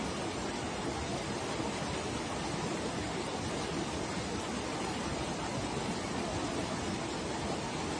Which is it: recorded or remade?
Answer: recorded